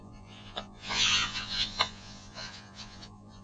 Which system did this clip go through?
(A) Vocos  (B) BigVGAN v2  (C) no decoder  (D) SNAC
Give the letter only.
A